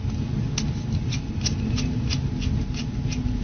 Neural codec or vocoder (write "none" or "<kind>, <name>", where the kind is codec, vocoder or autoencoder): none